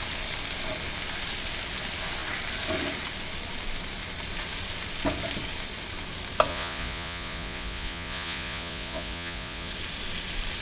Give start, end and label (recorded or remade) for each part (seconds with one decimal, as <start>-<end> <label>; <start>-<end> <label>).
0.0-6.5 recorded; 6.5-9.7 remade; 9.7-10.6 recorded